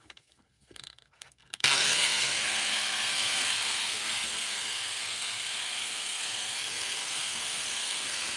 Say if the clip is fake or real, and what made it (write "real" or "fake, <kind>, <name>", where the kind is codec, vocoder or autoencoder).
fake, codec, SNAC